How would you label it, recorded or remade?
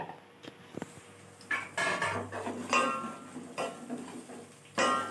recorded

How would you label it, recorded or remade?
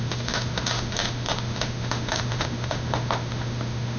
remade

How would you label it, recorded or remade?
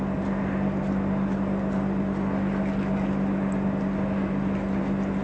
recorded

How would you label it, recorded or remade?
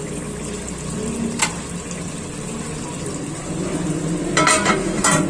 recorded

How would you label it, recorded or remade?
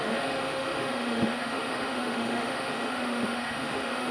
remade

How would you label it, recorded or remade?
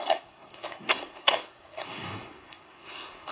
remade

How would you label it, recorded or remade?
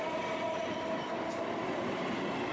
recorded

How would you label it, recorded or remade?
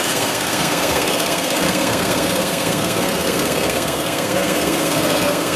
remade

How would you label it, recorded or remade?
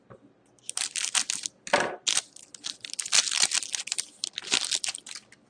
recorded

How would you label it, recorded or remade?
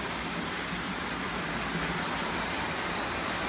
recorded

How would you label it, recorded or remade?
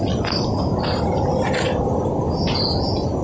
recorded